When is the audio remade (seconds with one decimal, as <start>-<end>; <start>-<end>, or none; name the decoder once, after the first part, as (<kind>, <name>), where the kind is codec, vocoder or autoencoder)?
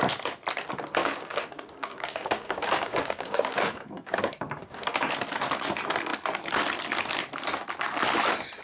1.0-5.1 (codec, DAC)